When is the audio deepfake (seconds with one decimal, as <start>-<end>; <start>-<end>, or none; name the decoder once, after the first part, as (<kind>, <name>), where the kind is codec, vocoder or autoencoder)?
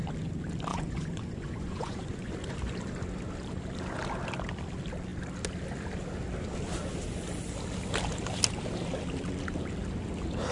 0.7-2.3 (vocoder, Vocos)